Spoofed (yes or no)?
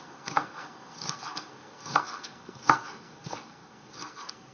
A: yes